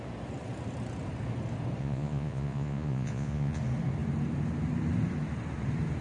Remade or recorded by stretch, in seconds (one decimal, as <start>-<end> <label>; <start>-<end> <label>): 0.0-1.8 recorded; 1.8-3.6 remade; 3.6-6.0 recorded